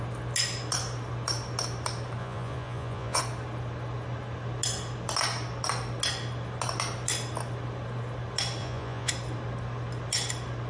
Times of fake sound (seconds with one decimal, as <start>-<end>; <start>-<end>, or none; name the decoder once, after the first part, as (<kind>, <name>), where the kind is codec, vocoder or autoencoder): 2.2-3.2 (vocoder, Vocos); 8.6-9.1